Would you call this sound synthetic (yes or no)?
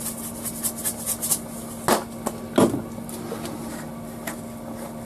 no